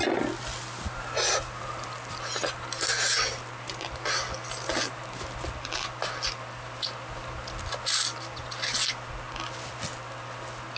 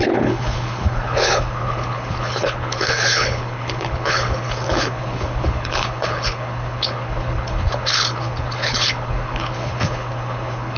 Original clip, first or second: first